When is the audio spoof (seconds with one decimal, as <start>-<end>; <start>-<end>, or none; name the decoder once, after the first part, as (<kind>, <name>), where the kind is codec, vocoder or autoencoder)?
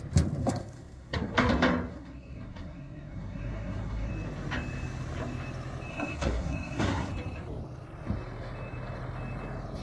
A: 0.4-1.5 (codec, SNAC); 1.9-4.1; 5.9-7.1